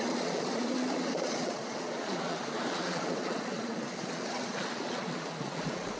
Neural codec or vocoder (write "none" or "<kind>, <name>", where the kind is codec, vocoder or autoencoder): vocoder, Vocos